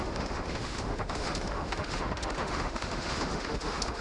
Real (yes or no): no